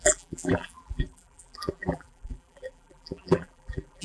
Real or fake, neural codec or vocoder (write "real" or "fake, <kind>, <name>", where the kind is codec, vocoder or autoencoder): fake, vocoder, BigVGAN v2